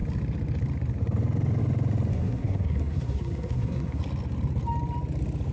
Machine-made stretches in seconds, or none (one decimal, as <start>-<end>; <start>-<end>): 2.1-4.0